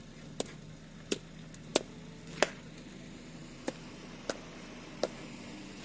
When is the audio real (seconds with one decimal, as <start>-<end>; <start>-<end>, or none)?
0.0-5.8